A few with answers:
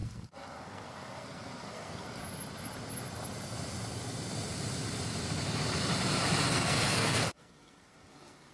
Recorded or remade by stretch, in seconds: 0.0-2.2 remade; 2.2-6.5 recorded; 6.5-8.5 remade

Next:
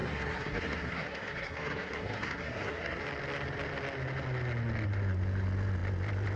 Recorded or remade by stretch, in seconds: 0.0-3.0 remade; 3.0-6.4 recorded

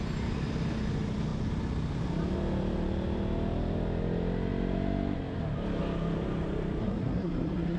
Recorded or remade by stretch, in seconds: 0.0-6.8 recorded; 6.8-7.8 remade

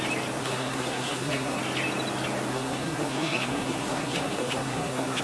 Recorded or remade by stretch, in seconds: 0.0-0.4 recorded; 0.4-1.6 remade; 1.6-2.5 recorded; 2.5-5.2 remade

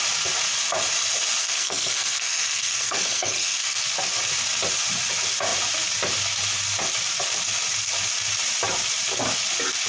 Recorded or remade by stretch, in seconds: 0.0-1.4 recorded; 1.4-3.8 remade; 3.8-9.9 recorded